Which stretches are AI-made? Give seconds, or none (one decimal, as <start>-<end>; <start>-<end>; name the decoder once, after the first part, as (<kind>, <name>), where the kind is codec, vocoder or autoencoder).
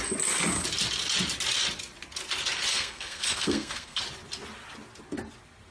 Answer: 2.7-4.0 (codec, SNAC)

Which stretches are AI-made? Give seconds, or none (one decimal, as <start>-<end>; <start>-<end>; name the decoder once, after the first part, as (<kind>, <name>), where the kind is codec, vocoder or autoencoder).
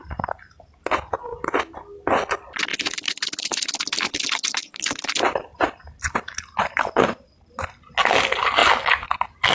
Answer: none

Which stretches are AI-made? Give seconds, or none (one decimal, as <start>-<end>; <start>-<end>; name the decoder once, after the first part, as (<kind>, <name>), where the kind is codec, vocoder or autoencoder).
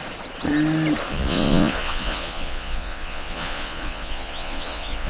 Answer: 1.1-5.1 (vocoder, Vocos)